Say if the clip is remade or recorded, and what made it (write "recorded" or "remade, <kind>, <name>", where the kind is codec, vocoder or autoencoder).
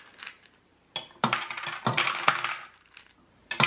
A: recorded